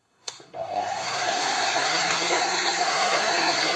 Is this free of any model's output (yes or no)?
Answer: no